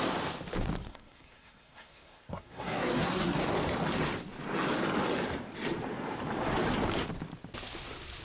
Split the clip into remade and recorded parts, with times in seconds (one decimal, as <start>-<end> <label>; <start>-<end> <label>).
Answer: 0.0-0.9 recorded; 0.9-3.4 remade; 3.4-8.2 recorded

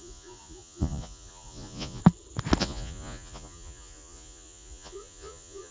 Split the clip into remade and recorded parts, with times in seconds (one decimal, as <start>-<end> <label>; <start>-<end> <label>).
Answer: 0.0-2.0 remade; 2.0-2.6 recorded; 2.6-5.7 remade

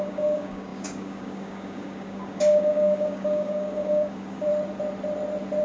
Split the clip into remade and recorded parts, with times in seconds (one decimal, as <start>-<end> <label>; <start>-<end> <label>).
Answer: 0.0-4.5 remade; 4.5-5.6 recorded